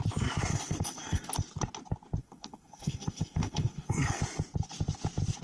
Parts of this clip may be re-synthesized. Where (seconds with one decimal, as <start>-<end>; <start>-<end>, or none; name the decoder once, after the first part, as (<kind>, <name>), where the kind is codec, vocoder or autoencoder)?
0.5-1.3 (codec, SNAC); 2.2-4.2